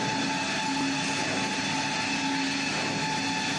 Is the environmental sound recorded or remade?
recorded